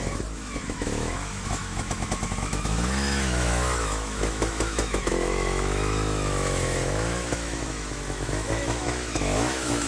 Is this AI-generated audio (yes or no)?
yes